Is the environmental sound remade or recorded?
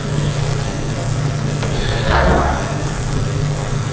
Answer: remade